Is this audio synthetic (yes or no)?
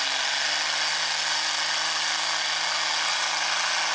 no